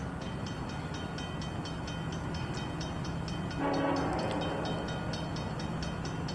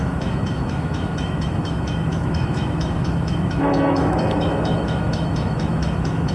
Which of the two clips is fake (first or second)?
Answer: second